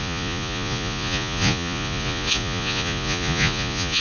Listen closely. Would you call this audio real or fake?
fake